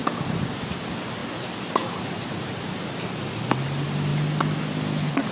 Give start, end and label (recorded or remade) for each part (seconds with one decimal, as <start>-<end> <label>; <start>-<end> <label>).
0.0-5.3 recorded